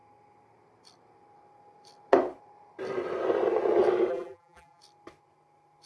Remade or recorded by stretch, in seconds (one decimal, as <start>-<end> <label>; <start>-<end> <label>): 0.0-4.1 recorded; 4.1-4.8 remade; 4.8-5.9 recorded